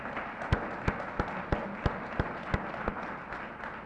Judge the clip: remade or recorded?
recorded